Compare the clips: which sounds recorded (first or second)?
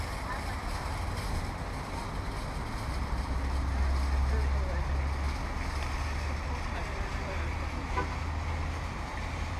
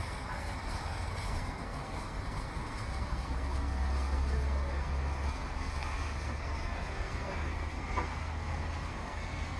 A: first